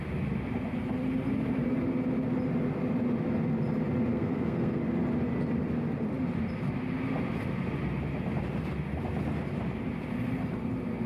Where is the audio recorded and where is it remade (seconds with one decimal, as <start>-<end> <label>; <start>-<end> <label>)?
0.0-4.1 recorded; 4.1-4.8 remade; 4.8-11.1 recorded